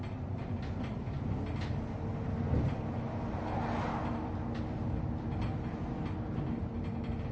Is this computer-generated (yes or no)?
no